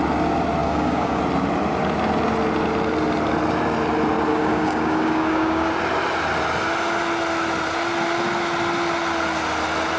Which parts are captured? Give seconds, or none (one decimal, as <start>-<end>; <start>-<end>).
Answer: 0.0-0.6; 1.2-4.3; 5.7-10.0